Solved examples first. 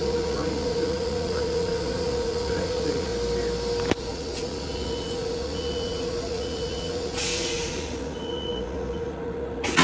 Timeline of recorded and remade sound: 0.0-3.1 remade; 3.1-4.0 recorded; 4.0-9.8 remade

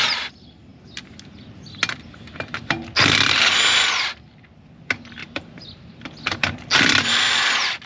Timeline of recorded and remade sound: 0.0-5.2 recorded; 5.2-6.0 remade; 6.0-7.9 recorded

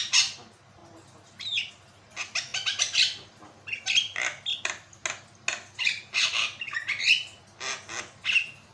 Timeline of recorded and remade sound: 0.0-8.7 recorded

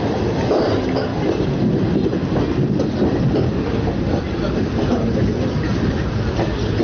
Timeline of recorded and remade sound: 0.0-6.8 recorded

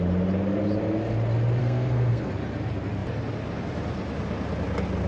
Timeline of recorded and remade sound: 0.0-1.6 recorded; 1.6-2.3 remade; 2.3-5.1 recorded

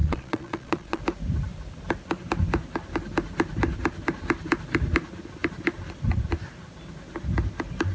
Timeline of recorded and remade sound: 0.0-1.0 remade; 1.0-7.9 recorded